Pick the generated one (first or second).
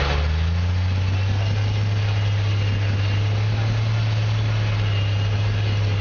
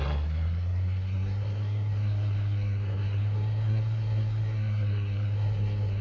second